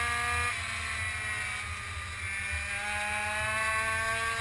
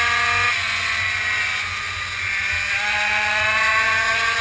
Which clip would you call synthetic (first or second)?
second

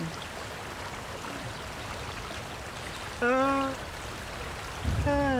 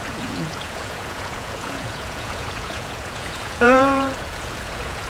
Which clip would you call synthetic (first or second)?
second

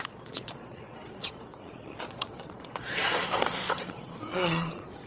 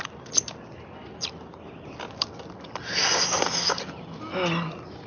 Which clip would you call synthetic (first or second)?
first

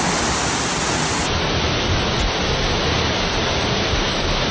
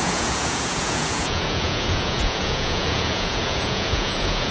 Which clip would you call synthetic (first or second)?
second